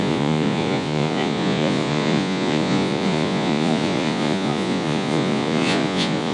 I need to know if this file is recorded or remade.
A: remade